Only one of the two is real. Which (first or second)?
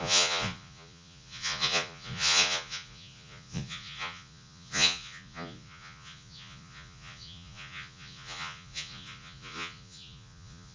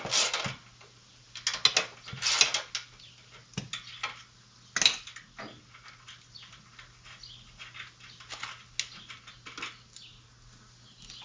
second